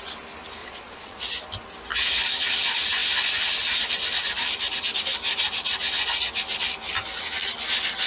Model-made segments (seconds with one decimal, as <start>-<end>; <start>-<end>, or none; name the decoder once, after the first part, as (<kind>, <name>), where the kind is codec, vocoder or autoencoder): 0.6-1.2 (vocoder, Vocos)